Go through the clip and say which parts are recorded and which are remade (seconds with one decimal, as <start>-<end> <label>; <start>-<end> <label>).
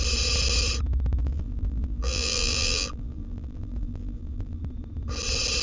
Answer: 0.0-1.2 recorded; 1.2-4.6 remade; 4.6-5.6 recorded